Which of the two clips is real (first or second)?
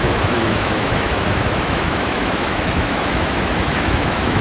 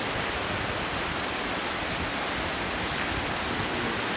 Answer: second